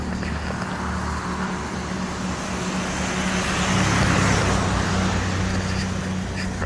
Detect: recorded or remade recorded